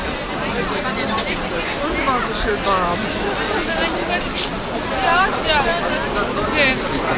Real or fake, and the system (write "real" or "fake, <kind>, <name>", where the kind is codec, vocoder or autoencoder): real